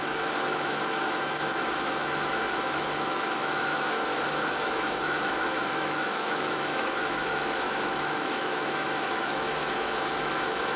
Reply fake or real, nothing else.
fake